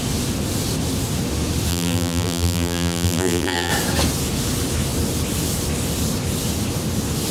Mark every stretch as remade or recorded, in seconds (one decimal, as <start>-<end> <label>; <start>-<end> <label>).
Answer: 0.0-1.7 recorded; 1.7-3.7 remade; 3.7-7.3 recorded